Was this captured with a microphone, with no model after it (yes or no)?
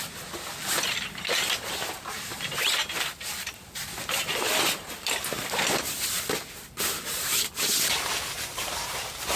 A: yes